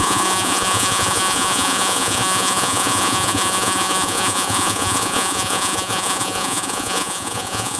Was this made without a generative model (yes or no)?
no